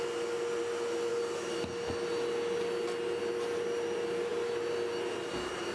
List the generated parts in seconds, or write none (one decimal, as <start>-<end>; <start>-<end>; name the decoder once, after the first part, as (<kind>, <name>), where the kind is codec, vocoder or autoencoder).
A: none